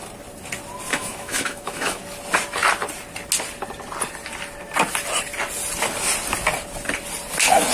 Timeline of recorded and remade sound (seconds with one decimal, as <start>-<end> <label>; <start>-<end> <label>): 0.0-0.9 recorded; 0.9-2.0 remade; 2.0-7.7 recorded